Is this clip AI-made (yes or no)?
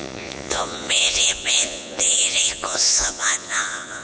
yes